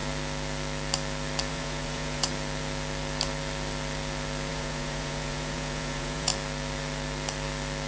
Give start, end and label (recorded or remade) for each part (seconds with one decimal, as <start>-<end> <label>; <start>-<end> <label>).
0.0-1.5 recorded; 1.5-2.3 remade; 2.3-4.5 recorded; 4.5-6.3 remade; 6.3-7.9 recorded